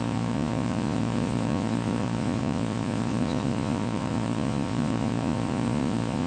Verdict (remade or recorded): remade